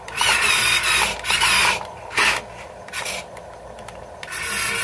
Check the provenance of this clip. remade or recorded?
remade